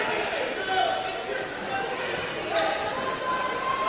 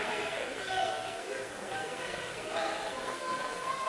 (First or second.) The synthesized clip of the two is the second